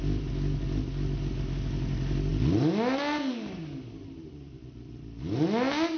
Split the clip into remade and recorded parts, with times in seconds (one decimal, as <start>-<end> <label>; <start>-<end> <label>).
0.0-6.0 recorded